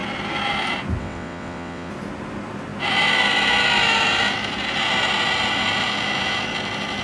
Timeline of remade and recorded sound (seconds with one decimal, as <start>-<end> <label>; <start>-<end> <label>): 0.0-1.0 recorded; 1.0-1.9 remade; 1.9-7.0 recorded